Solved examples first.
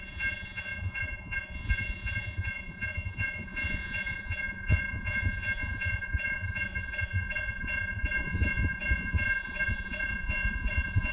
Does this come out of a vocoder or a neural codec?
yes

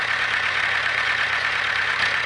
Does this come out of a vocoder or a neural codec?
yes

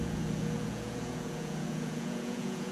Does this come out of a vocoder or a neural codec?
yes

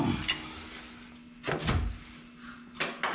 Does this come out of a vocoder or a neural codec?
no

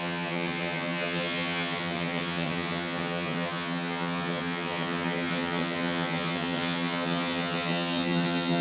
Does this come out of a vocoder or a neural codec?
yes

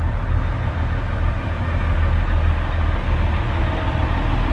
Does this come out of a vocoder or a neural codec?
no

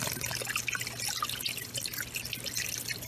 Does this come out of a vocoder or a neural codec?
no